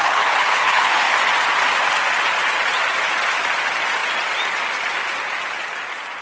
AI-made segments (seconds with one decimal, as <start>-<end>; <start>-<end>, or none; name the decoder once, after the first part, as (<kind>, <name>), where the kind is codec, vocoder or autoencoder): 0.0-1.1 (codec, HILCodec)

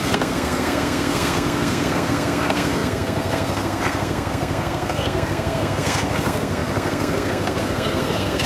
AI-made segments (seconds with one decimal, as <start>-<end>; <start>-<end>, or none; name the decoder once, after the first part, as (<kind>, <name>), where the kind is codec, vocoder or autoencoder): 0.0-8.5 (codec, SNAC)

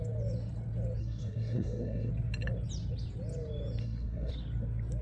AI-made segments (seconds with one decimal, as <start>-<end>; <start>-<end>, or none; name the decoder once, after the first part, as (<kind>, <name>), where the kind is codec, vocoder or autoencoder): 1.0-2.1 (codec, SNAC); 3.8-4.3

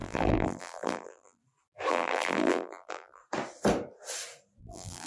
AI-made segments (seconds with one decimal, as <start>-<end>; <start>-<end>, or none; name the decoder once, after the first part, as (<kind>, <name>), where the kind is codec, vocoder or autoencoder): 0.0-1.4 (vocoder, BigVGAN v2); 1.9-3.2; 4.6-5.1

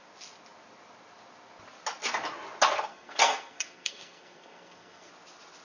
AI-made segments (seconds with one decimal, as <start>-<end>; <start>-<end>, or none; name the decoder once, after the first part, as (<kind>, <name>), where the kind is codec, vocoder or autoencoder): 2.9-5.1 (codec, SNAC)